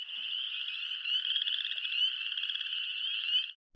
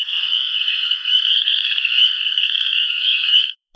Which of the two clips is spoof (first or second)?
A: second